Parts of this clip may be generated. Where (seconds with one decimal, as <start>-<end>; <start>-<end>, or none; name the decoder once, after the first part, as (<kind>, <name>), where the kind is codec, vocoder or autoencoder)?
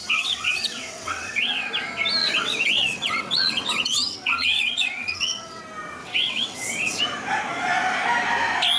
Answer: 0.0-1.7 (vocoder, WaveNeXt); 2.2-5.6; 6.0-7.0